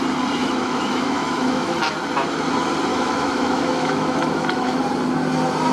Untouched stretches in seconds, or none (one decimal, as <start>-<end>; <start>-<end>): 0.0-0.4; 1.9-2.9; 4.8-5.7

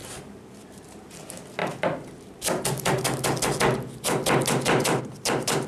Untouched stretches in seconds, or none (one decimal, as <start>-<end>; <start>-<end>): 1.0-5.7

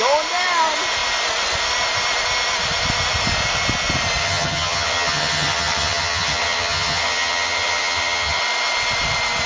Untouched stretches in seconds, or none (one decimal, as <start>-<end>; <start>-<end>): 0.0-4.2; 8.4-9.5

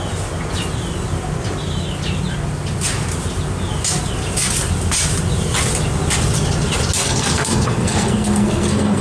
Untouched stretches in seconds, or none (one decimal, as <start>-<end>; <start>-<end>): 0.0-7.0